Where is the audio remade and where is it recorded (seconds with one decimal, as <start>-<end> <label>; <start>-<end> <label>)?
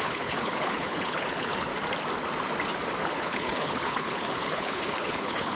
0.0-1.7 remade; 1.7-3.0 recorded; 3.0-5.6 remade